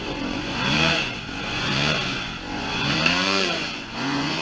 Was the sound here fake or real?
fake